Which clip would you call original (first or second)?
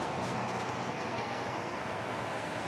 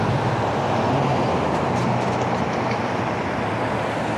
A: second